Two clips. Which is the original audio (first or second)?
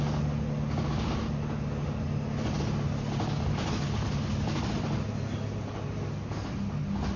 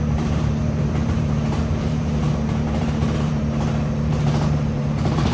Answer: first